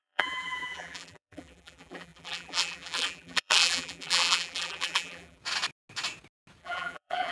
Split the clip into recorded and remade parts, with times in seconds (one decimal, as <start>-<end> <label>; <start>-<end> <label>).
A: 0.0-5.4 remade; 5.4-6.6 recorded; 6.6-7.3 remade